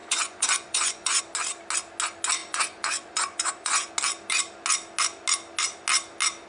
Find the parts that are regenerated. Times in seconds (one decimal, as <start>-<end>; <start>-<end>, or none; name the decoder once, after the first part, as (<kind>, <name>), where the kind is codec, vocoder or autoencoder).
0.0-1.2 (vocoder, Vocos); 2.4-3.9